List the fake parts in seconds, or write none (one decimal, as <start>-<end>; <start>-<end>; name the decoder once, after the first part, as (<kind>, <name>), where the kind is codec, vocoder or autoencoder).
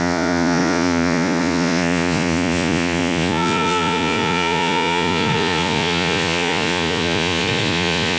0.0-8.2 (vocoder, Vocos)